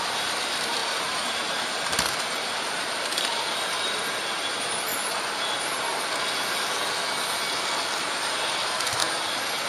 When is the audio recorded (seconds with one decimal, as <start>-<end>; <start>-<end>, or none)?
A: 4.9-8.0; 9.0-9.7

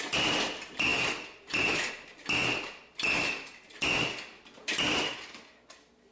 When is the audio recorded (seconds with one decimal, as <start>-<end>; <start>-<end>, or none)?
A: 0.0-6.1